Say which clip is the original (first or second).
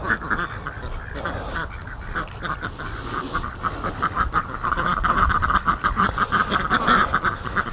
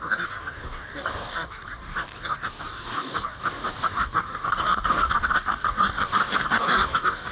first